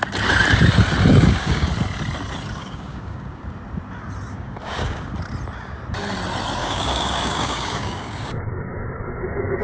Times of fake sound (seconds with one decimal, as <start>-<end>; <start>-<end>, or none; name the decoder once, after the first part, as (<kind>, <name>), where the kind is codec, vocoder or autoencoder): 1.1-1.7 (codec, DAC); 2.6-3.4; 4.3-5.1; 6.6-9.6